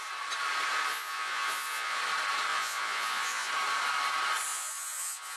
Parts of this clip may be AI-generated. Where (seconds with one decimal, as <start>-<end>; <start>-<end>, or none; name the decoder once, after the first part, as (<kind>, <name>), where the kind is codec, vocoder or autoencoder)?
0.9-2.0 (vocoder, Vocos); 2.5-3.5; 4.5-5.4